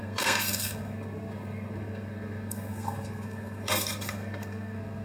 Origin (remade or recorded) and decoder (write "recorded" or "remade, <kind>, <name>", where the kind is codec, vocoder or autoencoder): remade, codec, SNAC